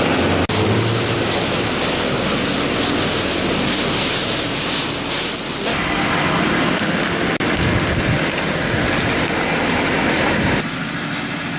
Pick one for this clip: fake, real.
real